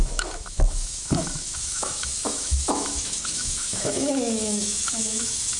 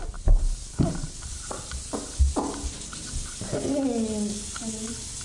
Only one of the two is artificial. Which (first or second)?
first